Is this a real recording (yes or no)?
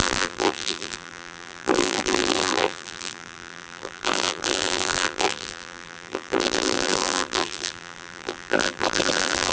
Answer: no